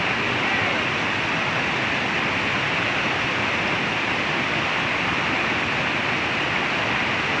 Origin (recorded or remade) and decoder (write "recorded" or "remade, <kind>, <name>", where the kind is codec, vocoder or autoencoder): recorded